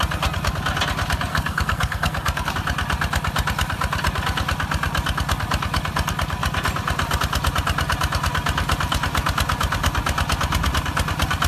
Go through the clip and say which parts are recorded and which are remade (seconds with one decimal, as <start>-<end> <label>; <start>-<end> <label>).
0.0-1.3 recorded; 1.3-2.5 remade; 2.5-11.5 recorded